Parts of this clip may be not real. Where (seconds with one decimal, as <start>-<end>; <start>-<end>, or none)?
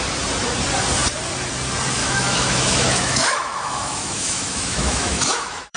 2.0-5.8